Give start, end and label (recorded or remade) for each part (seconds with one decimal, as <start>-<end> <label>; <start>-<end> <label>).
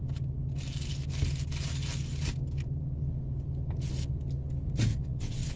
0.0-4.9 recorded; 4.9-5.6 remade